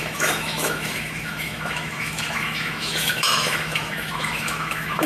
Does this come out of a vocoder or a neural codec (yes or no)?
yes